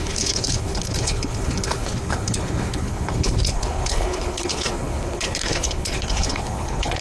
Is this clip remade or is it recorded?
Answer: remade